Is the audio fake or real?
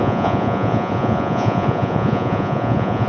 fake